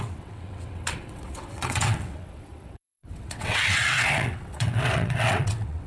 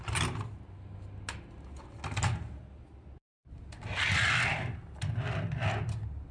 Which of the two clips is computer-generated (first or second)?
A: first